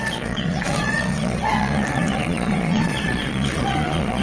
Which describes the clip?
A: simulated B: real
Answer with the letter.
A